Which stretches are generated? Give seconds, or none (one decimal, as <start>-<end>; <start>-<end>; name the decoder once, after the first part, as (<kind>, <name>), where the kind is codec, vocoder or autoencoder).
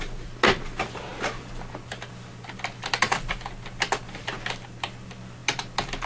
none